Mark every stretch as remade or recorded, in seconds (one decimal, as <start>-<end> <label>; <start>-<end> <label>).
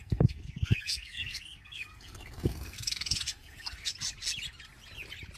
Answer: 0.0-3.9 remade; 3.9-5.4 recorded